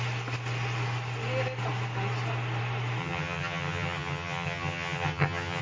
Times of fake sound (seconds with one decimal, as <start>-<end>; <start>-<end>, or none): 3.0-5.6